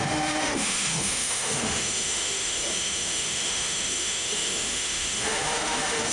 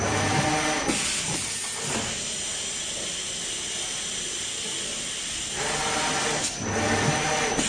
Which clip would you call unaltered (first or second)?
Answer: second